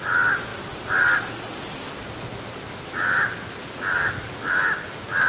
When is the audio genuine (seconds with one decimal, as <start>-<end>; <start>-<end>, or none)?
0.0-5.3